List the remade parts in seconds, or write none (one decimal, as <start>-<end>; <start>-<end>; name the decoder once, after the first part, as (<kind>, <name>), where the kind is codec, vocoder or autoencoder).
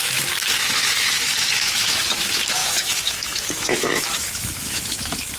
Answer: 0.0-5.4 (autoencoder, DAC-VAE)